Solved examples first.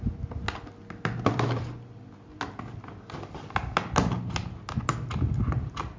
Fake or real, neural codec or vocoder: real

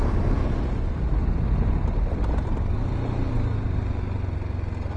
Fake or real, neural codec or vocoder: real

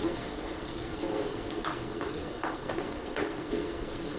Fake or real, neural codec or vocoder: fake, codec, SNAC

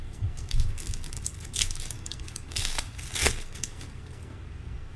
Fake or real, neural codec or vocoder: fake, codec, SNAC